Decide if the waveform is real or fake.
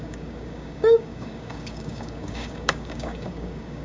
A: fake